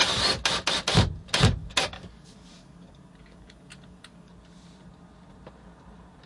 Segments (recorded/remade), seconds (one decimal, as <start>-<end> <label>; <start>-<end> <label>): 0.0-1.6 recorded; 1.6-4.3 remade; 4.3-6.3 recorded